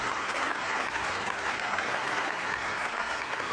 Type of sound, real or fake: fake